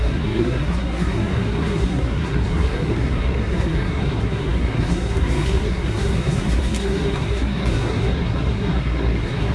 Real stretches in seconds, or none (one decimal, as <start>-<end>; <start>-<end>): none